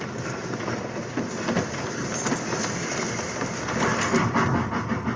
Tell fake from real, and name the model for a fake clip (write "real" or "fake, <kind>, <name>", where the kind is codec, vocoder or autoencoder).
real